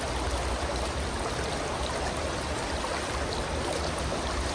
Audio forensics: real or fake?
real